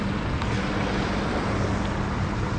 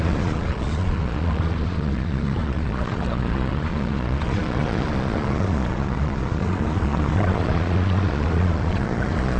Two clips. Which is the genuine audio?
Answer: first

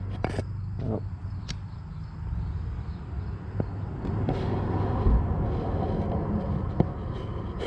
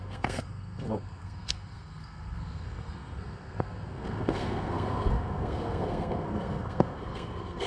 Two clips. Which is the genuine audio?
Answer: first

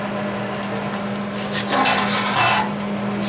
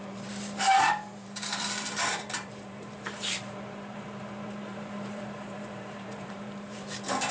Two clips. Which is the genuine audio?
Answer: first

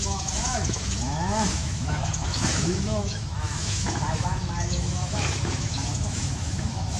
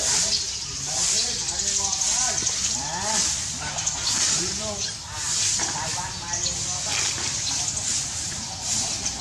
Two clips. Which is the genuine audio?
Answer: second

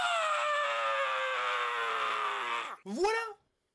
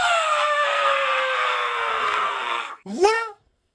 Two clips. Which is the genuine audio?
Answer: first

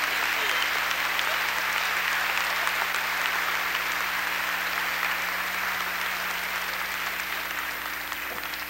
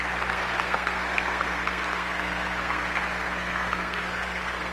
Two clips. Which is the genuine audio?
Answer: first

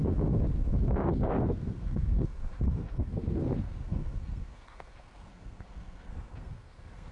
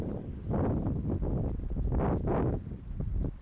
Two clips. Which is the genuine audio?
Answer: second